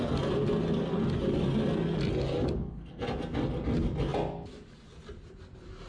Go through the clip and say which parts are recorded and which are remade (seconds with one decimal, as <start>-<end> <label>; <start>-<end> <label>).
0.0-5.9 recorded